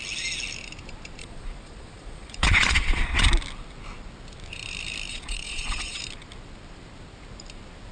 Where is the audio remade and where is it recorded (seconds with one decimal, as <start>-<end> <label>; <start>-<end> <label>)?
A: 0.0-1.2 recorded; 1.2-3.2 remade; 3.2-5.1 recorded; 5.1-6.0 remade; 6.0-7.9 recorded